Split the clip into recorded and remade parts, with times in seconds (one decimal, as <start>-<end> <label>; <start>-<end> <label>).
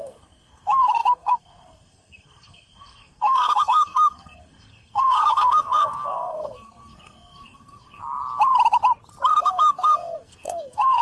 0.0-8.0 remade; 8.0-9.3 recorded; 9.3-11.0 remade